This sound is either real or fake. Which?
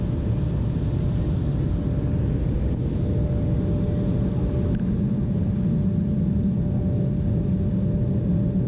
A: real